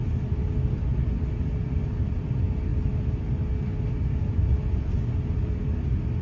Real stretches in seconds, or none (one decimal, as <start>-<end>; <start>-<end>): 0.0-6.2